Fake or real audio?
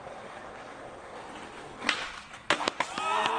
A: real